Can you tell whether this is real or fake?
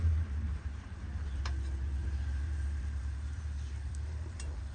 fake